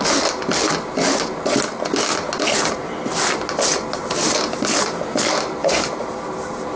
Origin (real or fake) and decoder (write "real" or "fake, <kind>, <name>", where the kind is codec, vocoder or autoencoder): real